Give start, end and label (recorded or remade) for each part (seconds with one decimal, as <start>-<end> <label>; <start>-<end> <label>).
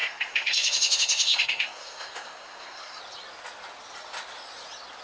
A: 0.0-3.0 remade; 3.0-5.0 recorded